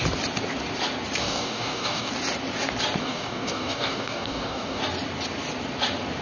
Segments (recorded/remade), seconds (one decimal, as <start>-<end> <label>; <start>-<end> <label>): 0.0-1.2 recorded; 1.2-2.1 remade; 2.1-3.0 recorded; 3.0-4.8 remade; 4.8-6.2 recorded